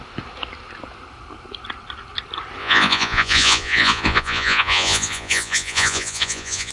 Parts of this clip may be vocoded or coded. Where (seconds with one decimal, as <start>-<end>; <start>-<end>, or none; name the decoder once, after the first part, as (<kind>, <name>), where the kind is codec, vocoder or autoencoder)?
2.6-6.7 (vocoder, Vocos)